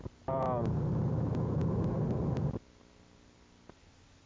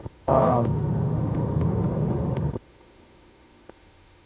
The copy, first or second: second